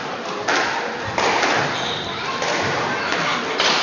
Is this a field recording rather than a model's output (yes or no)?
yes